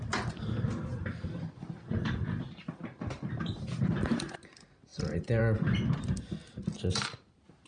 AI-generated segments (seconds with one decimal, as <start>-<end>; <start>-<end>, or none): 0.9-4.4; 4.9-5.4